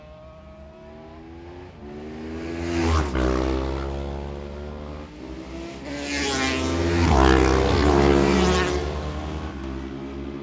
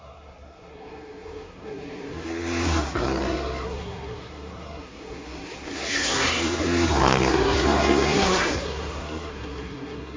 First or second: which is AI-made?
second